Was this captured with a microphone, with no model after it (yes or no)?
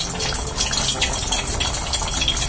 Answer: yes